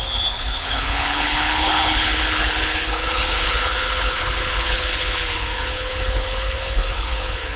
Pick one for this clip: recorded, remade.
remade